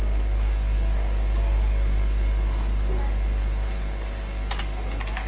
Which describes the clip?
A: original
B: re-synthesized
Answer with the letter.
B